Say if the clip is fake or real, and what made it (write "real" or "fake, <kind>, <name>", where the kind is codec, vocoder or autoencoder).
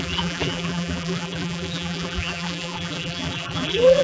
fake, vocoder, BigVGAN v2